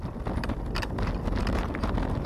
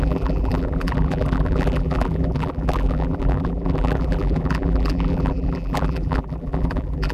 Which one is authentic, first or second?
first